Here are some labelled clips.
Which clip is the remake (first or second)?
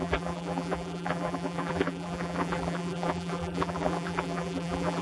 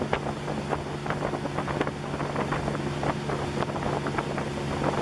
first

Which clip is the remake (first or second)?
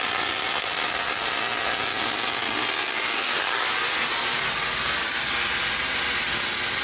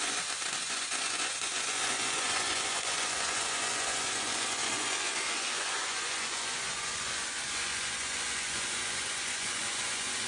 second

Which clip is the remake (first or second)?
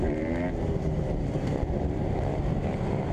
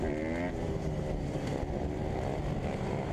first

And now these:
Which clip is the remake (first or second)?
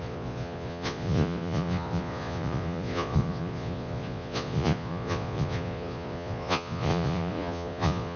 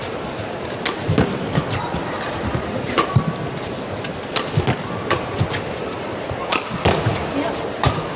first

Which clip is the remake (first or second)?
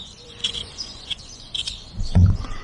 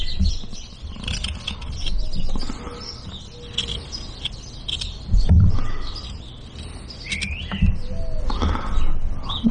first